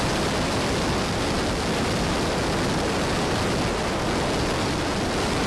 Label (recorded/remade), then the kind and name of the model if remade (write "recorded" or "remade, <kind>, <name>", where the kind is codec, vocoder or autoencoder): recorded